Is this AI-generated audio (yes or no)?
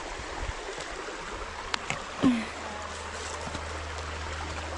no